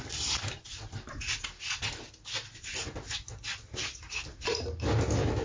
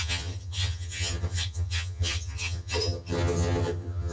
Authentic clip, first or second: first